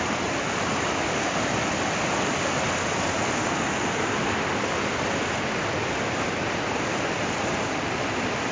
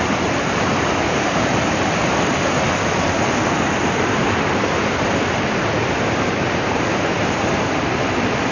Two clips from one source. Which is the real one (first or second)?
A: first